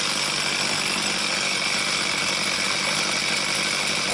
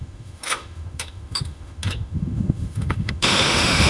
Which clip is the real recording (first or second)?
first